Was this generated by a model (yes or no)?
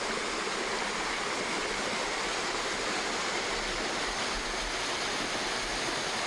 no